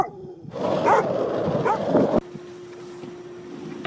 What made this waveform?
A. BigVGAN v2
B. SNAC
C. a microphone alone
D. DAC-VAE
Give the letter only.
A